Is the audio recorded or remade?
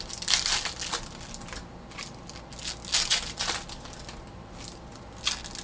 recorded